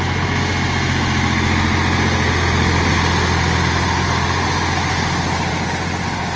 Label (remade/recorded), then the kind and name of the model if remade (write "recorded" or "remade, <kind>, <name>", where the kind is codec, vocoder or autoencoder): recorded